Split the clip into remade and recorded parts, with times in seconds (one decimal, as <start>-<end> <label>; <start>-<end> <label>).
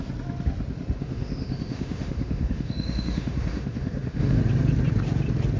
0.0-1.0 recorded; 1.0-4.4 remade; 4.4-5.6 recorded